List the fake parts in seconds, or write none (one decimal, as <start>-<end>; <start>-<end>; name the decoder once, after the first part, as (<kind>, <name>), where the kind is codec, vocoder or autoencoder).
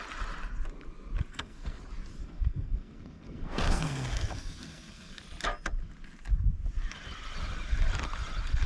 1.3-1.8 (codec, SNAC); 2.2-5.2